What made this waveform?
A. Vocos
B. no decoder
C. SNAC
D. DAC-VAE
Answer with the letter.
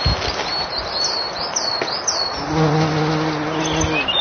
B